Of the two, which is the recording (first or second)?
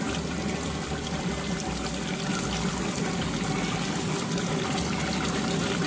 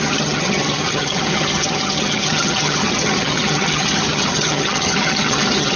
first